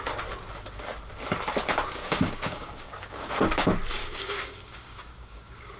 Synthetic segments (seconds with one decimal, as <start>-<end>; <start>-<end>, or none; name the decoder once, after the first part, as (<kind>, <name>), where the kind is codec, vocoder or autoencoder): 2.0-3.3 (codec, DAC); 4.0-5.8

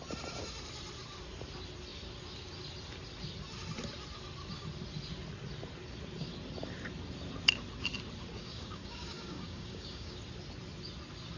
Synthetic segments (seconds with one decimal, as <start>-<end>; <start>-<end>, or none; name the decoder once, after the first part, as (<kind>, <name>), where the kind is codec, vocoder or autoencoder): 8.4-10.2 (codec, DAC)

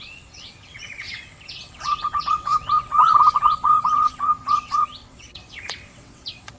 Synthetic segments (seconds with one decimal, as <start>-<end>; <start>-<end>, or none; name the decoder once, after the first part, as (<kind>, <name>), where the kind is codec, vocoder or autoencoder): 0.0-6.6 (vocoder, WaveNeXt)

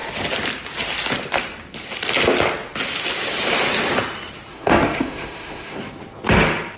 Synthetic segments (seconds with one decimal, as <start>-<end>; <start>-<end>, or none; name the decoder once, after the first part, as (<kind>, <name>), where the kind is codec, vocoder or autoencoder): 4.5-5.8 (autoencoder, DAC-VAE)

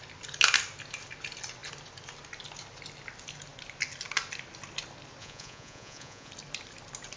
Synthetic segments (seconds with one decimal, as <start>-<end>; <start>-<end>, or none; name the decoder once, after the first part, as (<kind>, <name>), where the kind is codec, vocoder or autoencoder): 5.2-6.3 (vocoder, Vocos)

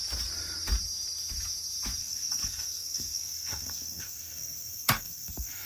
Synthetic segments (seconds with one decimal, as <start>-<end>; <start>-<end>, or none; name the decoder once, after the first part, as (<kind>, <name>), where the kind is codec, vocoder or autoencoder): 2.0-5.7 (codec, SNAC)

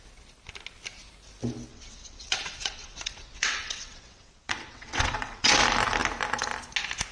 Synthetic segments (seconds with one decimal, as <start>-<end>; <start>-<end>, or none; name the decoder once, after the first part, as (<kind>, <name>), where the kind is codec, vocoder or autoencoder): 1.7-5.5 (vocoder, WaveNeXt)